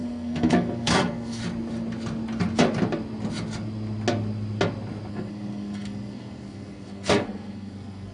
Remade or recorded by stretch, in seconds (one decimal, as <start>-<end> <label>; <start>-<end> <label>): 0.0-1.4 remade; 1.4-5.1 recorded; 5.1-8.1 remade